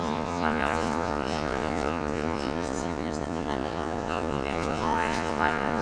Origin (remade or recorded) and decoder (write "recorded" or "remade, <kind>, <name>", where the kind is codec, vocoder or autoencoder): remade, vocoder, Vocos